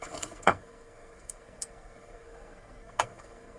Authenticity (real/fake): fake